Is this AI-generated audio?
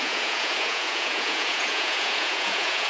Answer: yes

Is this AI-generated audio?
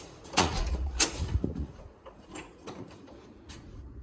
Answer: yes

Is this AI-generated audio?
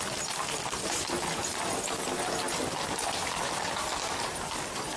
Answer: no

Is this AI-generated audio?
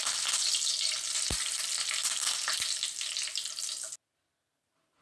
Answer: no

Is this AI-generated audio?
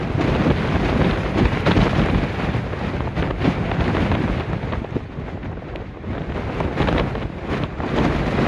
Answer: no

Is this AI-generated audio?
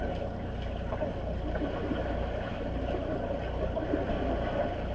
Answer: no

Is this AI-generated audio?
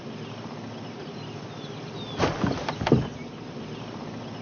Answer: no